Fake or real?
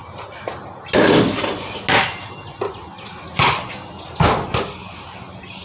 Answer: real